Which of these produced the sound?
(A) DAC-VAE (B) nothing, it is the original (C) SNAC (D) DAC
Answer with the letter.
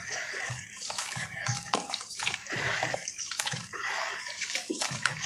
D